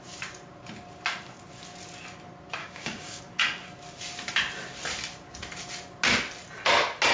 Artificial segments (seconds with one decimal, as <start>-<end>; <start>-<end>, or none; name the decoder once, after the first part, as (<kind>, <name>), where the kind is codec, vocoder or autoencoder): 2.6-3.2 (codec, DAC)